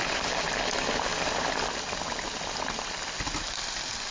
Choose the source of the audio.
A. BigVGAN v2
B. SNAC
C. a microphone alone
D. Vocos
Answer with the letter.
C